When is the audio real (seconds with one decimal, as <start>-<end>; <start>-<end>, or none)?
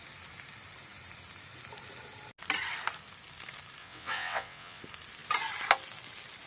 0.0-3.8; 4.8-6.5